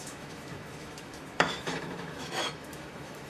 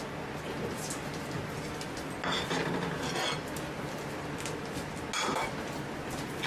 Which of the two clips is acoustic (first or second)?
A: second